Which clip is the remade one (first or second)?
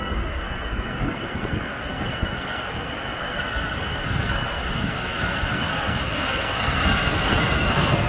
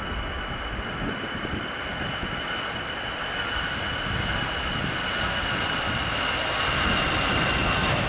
first